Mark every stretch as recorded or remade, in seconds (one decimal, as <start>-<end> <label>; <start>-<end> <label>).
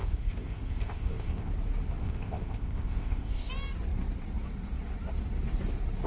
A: 0.0-1.5 remade; 1.5-2.0 recorded; 2.0-3.5 remade; 3.5-6.1 recorded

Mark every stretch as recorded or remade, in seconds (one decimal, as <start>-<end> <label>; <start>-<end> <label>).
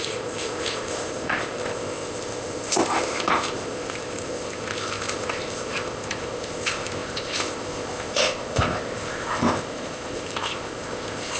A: 0.0-11.4 remade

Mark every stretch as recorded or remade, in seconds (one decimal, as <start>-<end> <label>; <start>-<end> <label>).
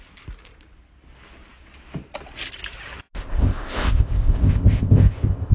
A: 0.0-3.2 recorded; 3.2-5.5 remade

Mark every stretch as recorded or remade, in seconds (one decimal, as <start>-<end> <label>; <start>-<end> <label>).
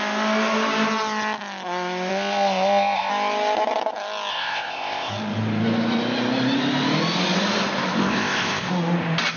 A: 0.0-2.1 recorded; 2.1-3.1 remade; 3.1-4.3 recorded; 4.3-5.1 remade; 5.1-8.0 recorded; 8.0-8.7 remade; 8.7-9.4 recorded